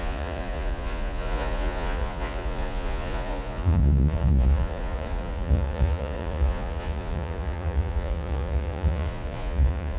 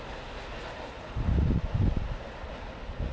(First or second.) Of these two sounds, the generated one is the first